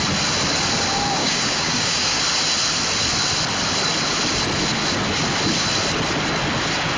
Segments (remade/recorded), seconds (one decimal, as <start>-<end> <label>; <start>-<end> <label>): 0.0-1.2 recorded; 1.2-2.2 remade; 2.2-7.0 recorded